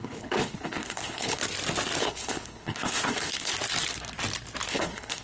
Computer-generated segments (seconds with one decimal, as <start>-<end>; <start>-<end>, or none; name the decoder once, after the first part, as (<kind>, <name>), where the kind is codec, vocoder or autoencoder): 0.0-1.4 (codec, HILCodec); 2.0-3.5; 4.7-5.2